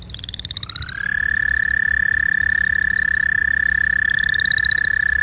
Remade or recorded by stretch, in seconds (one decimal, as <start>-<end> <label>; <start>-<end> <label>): 0.0-5.2 recorded